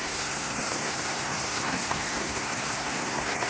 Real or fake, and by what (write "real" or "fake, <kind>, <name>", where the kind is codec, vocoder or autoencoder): fake, codec, SNAC